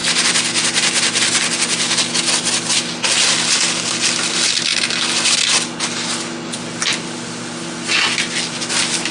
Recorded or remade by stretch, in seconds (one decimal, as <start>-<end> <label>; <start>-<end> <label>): 0.0-9.1 recorded